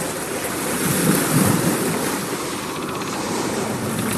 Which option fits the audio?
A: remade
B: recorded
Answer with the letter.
B